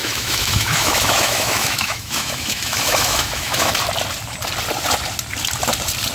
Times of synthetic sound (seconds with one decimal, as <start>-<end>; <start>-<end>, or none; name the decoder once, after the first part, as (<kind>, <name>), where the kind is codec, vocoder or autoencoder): 0.0-3.7 (autoencoder, DAC-VAE)